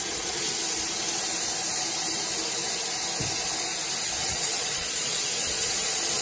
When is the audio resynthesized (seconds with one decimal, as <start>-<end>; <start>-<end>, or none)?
0.0-0.5; 4.2-6.2